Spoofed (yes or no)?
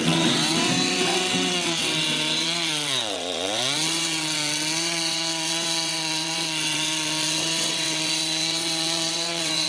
yes